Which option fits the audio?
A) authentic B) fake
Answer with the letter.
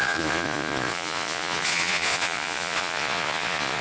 B